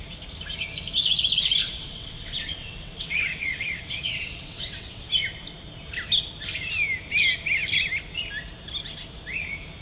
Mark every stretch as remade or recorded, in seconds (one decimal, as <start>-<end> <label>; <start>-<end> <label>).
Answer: 0.0-1.6 recorded; 1.6-5.1 remade; 5.1-9.8 recorded